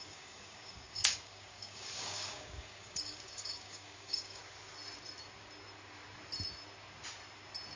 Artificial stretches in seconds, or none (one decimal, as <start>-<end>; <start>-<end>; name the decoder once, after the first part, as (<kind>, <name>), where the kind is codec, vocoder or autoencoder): 0.0-4.4 (codec, DAC)